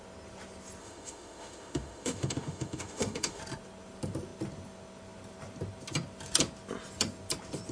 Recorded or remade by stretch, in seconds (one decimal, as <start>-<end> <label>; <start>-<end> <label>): 0.0-0.8 recorded; 0.8-3.4 remade; 3.4-7.7 recorded